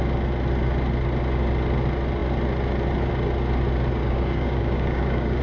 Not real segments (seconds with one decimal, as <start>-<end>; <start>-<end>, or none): 4.0-5.4